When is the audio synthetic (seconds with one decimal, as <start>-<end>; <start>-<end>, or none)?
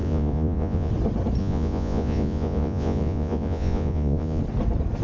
0.0-0.9; 1.4-4.4